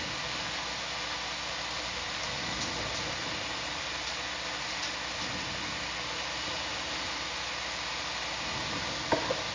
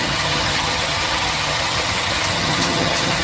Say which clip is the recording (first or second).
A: first